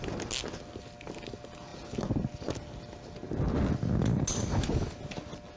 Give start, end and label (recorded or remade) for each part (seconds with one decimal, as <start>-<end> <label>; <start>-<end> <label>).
0.0-5.6 recorded